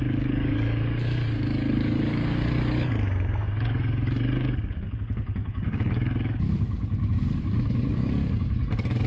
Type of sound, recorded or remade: remade